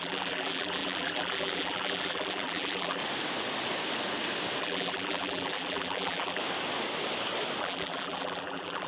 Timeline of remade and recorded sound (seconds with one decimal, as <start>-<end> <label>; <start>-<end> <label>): 0.0-3.0 remade; 3.0-4.6 recorded; 4.6-6.4 remade; 6.4-7.6 recorded; 7.6-8.9 remade